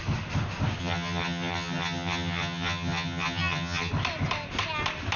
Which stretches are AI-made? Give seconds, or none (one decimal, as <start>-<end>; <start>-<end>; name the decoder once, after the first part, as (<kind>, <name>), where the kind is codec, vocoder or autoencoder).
0.8-3.9 (vocoder, HiFi-GAN)